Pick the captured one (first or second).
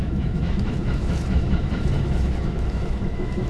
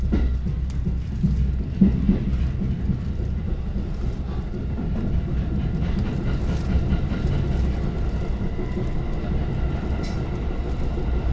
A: second